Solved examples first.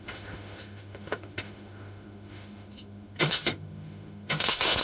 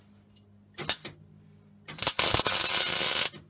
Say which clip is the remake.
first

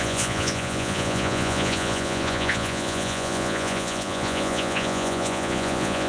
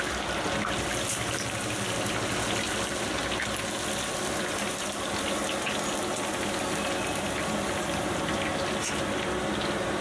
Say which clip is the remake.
first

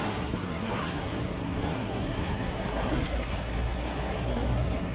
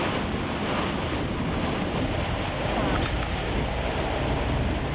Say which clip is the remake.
first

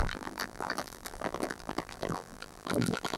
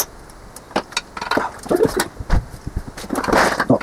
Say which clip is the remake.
first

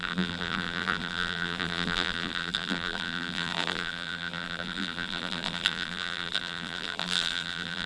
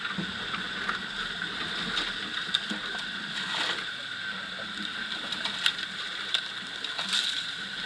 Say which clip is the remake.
first